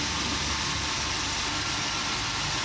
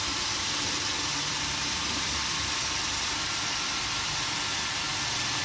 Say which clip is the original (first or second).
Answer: first